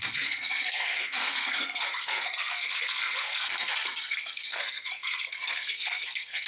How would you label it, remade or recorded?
remade